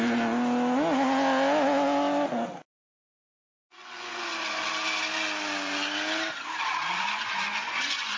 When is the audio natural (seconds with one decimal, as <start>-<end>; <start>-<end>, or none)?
0.0-3.3; 4.7-6.9